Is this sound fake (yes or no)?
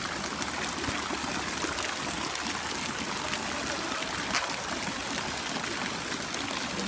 no